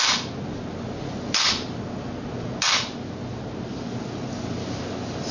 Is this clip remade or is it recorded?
recorded